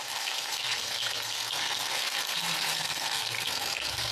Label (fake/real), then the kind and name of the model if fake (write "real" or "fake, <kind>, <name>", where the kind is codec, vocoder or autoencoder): fake, codec, SNAC